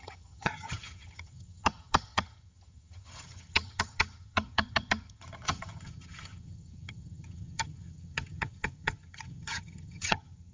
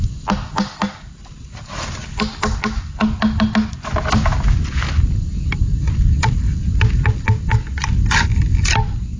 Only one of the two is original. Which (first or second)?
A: second